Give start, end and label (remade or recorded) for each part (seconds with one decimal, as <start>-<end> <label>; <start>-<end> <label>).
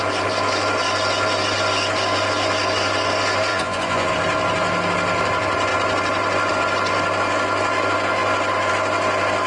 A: 0.0-3.5 recorded; 3.5-4.1 remade; 4.1-9.5 recorded